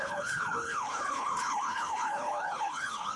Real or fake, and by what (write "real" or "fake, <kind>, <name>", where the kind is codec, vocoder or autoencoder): fake, codec, HILCodec